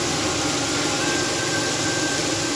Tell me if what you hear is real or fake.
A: real